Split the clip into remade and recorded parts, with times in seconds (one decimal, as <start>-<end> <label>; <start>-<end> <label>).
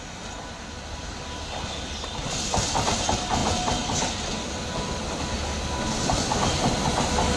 0.0-7.4 recorded